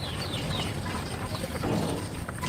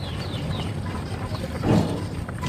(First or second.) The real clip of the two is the second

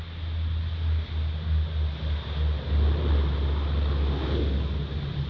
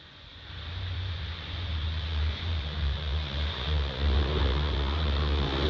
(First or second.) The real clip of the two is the first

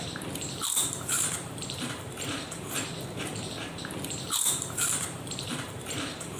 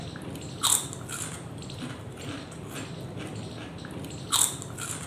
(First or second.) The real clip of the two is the second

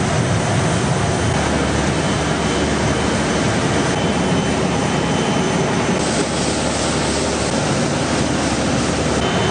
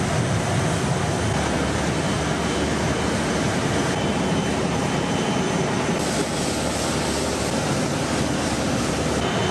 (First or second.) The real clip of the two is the first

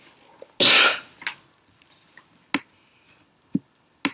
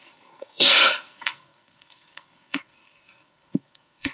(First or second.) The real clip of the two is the first